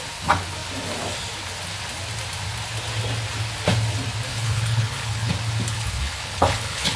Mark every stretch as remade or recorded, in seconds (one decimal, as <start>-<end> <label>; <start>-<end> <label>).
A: 0.0-4.3 recorded; 4.3-5.3 remade; 5.3-5.7 recorded; 5.7-7.0 remade